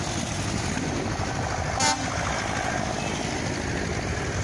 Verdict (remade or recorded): recorded